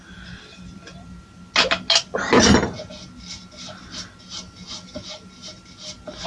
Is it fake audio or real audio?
real